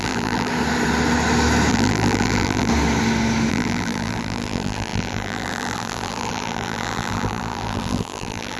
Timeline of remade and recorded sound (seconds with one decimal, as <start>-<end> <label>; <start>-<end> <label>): 0.0-0.5 remade; 0.5-1.7 recorded; 1.7-2.7 remade; 2.7-3.5 recorded; 3.5-8.6 remade